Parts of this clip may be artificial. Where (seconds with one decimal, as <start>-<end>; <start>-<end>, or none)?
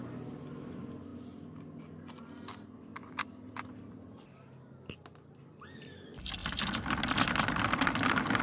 none